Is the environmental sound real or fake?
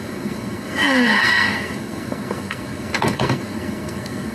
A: fake